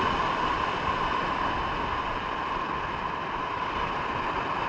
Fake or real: real